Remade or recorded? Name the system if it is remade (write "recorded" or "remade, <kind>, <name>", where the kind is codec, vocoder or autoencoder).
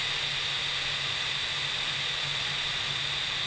recorded